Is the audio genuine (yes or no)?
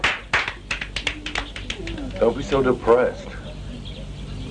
yes